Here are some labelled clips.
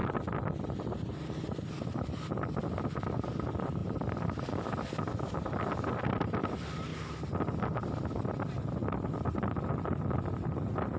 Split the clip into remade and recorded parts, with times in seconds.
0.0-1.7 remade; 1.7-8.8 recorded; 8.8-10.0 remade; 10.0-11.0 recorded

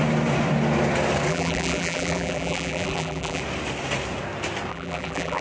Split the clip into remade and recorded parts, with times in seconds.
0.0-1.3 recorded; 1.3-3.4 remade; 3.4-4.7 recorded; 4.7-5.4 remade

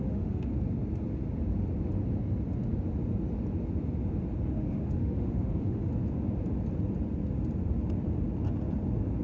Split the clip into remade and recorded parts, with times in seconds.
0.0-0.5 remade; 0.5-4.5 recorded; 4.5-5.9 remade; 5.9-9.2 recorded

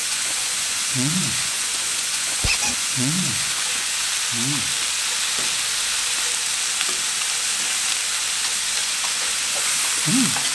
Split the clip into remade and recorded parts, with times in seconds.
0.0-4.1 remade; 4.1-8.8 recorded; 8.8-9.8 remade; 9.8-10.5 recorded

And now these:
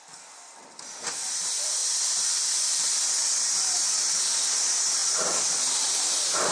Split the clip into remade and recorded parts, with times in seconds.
0.0-1.8 recorded; 1.8-3.7 remade; 3.7-5.0 recorded; 5.0-5.5 remade; 5.5-6.5 recorded